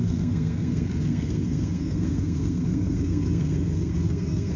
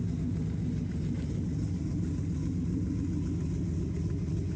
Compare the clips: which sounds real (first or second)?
second